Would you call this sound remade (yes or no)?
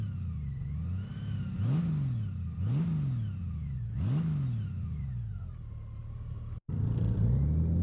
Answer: no